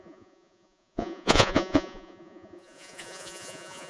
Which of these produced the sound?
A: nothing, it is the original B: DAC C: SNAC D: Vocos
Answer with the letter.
D